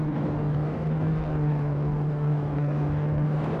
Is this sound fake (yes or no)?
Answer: yes